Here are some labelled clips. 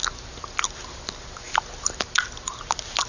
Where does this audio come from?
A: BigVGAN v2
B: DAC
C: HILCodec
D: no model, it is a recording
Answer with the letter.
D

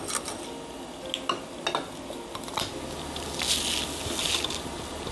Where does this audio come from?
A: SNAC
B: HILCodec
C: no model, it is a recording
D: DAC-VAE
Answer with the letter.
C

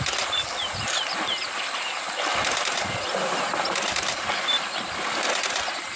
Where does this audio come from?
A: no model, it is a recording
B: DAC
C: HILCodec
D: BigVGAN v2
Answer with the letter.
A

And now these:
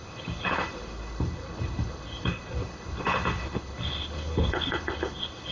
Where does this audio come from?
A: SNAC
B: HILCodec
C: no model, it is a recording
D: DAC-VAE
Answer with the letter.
B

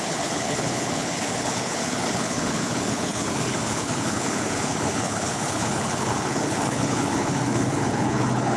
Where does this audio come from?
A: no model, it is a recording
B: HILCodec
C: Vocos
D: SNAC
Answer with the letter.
B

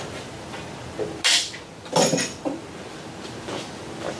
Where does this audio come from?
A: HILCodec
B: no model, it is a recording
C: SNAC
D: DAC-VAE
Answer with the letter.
B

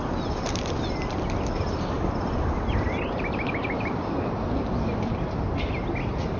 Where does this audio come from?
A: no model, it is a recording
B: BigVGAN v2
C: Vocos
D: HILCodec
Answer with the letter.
A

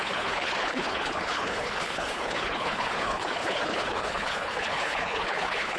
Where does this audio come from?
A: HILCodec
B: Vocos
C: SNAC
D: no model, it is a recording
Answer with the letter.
A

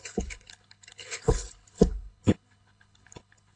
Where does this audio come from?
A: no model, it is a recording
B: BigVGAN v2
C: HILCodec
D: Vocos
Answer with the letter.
C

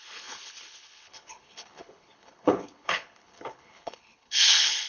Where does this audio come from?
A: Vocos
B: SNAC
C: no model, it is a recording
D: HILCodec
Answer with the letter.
D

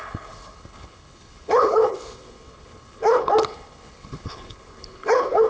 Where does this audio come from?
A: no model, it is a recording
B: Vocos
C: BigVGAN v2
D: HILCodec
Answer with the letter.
D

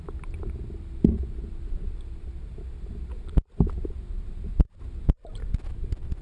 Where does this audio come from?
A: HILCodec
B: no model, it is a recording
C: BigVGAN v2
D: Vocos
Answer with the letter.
B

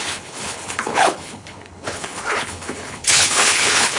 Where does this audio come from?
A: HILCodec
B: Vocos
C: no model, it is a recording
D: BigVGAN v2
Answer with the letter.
A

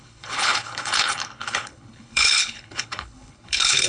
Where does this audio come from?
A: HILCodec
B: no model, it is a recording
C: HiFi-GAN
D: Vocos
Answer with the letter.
A